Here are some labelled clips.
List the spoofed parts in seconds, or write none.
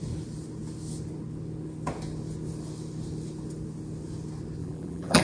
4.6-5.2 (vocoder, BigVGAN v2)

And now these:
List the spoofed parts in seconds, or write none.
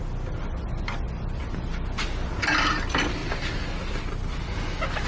none